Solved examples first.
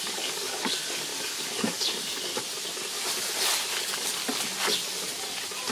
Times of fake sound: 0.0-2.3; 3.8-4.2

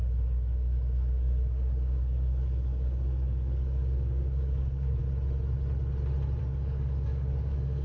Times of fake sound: 0.0-5.0; 6.4-7.8

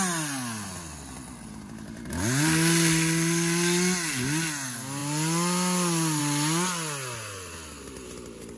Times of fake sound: none

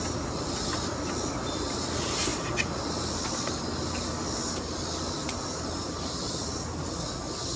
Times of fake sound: none

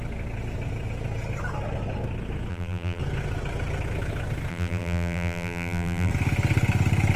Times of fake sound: 2.5-3.0; 4.5-6.1

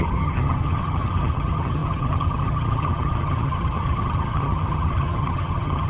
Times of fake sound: 0.0-5.9

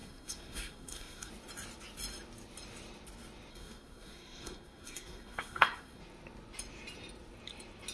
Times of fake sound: 0.0-1.3; 3.5-6.0